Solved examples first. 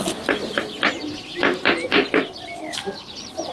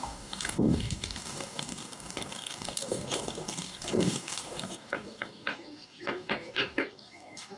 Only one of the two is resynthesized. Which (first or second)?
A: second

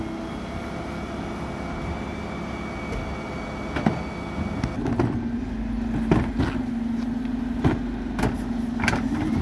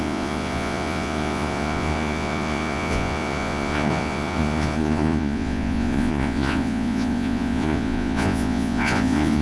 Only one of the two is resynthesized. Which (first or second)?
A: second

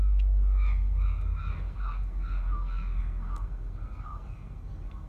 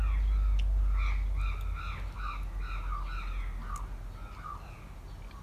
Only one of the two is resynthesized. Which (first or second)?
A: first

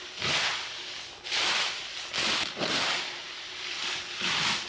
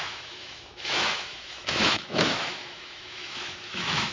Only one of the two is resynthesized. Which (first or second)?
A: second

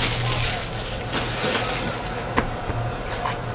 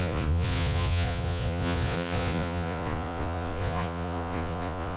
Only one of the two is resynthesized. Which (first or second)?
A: second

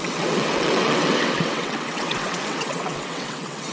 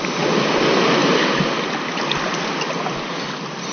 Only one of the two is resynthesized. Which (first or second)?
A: first